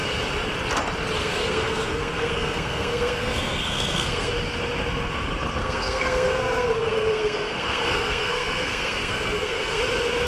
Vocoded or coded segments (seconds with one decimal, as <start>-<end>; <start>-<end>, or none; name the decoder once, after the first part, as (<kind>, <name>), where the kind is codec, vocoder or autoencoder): 1.2-4.3 (codec, SNAC); 5.6-9.8